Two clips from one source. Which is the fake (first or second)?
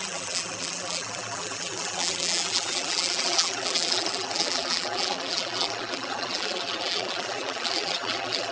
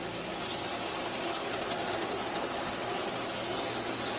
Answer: first